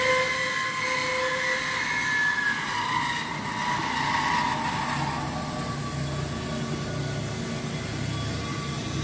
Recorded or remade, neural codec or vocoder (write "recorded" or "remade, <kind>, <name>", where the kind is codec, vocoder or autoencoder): recorded